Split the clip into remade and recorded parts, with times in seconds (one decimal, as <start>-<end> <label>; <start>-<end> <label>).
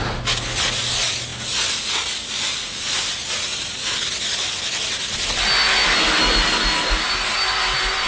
0.0-8.1 recorded